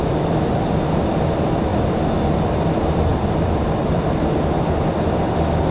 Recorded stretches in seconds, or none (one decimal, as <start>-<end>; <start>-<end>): 0.0-3.1; 4.7-5.7